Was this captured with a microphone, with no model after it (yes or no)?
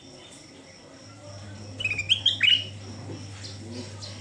yes